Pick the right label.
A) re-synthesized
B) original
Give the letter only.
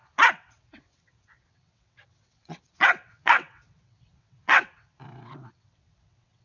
A